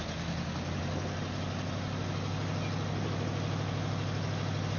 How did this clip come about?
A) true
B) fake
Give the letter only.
A